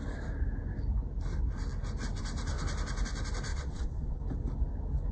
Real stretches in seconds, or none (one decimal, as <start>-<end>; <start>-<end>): 0.0-3.5; 4.2-5.1